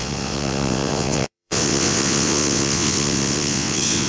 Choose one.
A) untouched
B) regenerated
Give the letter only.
B